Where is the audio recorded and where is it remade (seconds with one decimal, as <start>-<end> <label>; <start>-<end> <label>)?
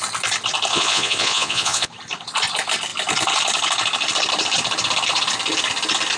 0.0-0.7 recorded; 0.7-1.9 remade; 1.9-6.2 recorded